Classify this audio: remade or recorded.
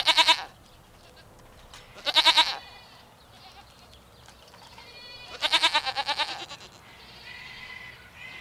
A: recorded